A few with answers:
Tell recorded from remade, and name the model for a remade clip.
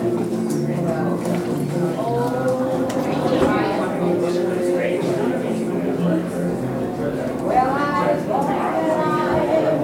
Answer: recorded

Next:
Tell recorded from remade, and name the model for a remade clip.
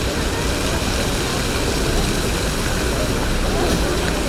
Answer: recorded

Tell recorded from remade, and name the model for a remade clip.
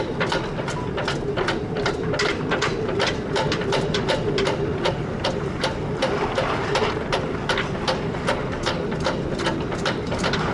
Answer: recorded